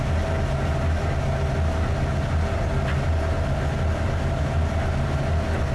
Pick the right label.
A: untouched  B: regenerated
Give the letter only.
A